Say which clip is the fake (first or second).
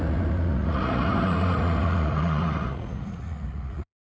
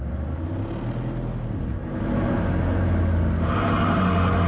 first